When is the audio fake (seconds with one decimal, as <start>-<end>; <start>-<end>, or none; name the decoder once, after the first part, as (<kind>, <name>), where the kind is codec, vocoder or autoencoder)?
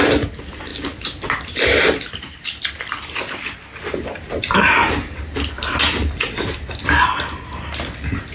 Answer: none